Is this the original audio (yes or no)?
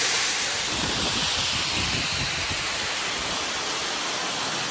yes